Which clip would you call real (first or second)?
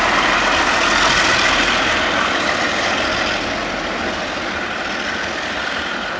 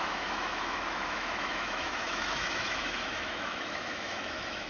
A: first